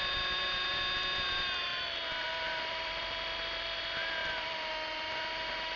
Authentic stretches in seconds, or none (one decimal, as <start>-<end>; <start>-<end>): 0.0-1.7; 3.8-4.2; 4.7-5.8